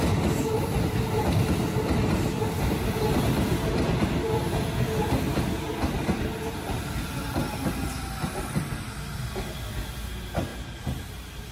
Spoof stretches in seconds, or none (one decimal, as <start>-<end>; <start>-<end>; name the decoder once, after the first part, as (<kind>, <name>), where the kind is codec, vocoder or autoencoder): none